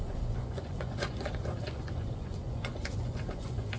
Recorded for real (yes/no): no